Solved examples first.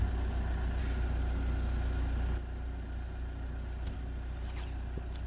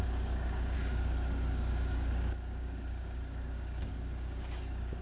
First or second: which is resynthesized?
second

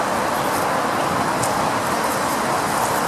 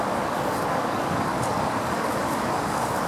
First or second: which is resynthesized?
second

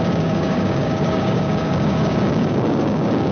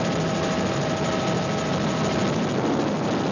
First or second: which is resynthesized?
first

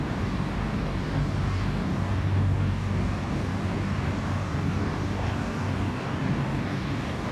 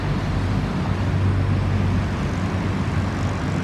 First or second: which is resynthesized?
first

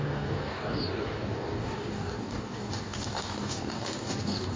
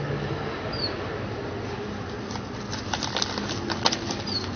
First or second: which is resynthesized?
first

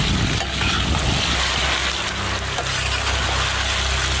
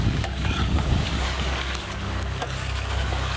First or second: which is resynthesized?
second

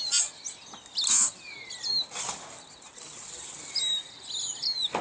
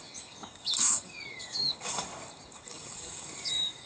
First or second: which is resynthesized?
second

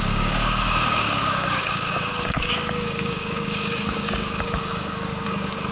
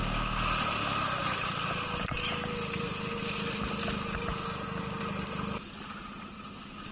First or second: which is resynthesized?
first